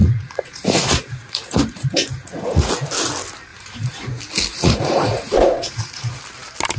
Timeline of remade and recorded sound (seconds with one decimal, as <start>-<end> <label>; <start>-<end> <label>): 0.0-2.7 remade; 2.7-3.5 recorded; 3.5-4.1 remade; 4.1-4.5 recorded; 4.5-6.2 remade; 6.2-6.8 recorded